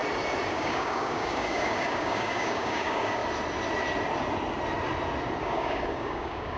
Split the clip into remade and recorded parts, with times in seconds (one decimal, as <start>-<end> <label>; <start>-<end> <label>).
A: 0.0-0.5 recorded; 0.5-3.2 remade; 3.2-5.4 recorded; 5.4-6.6 remade